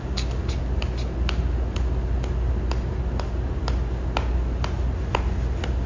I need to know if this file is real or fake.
real